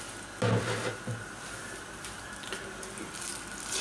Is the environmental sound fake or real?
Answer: real